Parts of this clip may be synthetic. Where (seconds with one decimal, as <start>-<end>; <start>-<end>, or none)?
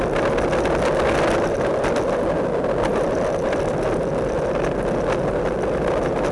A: 2.9-3.7